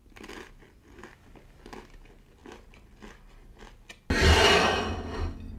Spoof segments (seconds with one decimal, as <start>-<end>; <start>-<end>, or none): none